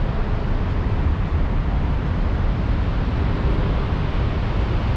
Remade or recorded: recorded